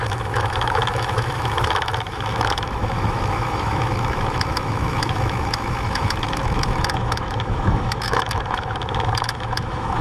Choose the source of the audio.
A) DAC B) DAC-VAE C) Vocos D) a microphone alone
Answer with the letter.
B